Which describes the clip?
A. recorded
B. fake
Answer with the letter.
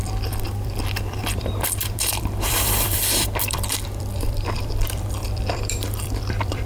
B